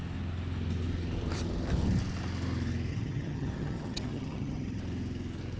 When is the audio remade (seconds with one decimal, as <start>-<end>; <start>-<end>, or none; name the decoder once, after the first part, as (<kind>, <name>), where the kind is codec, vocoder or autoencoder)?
2.9-4.8 (vocoder, HiFi-GAN)